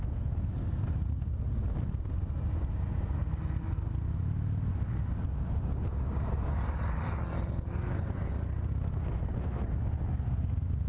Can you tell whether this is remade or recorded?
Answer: recorded